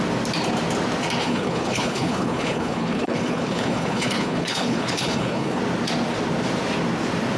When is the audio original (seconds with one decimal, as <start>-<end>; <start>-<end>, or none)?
0.0-1.2; 5.6-7.4